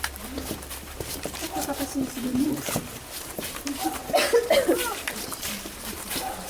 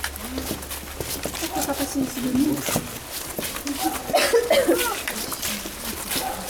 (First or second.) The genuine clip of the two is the second